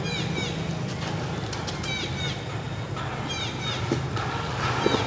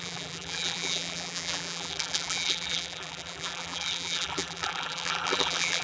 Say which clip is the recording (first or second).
first